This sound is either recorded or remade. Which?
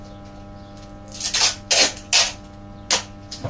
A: recorded